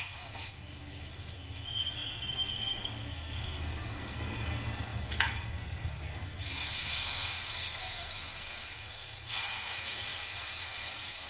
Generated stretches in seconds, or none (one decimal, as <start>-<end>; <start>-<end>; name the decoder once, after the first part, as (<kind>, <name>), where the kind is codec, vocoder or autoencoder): 0.0-11.3 (codec, SNAC)